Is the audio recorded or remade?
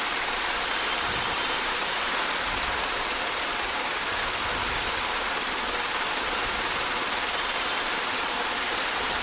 recorded